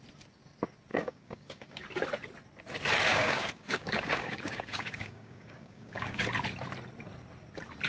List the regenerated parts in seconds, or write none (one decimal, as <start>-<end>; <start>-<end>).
0.9-1.8; 3.1-6.3